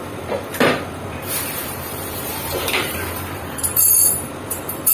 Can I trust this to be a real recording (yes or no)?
no